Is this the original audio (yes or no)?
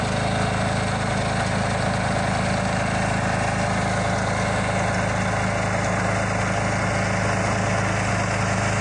yes